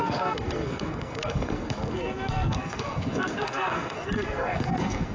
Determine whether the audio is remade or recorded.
remade